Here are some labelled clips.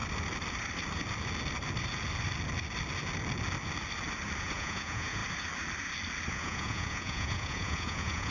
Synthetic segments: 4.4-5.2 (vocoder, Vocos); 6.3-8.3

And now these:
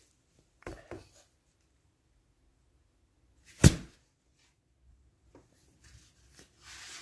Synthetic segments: none

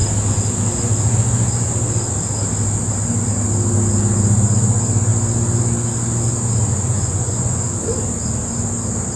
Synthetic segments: 6.7-7.8 (vocoder, Vocos)

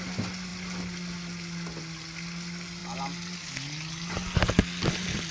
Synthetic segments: none